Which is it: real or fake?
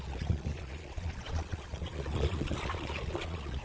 fake